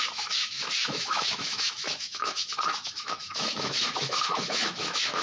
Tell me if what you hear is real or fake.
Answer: fake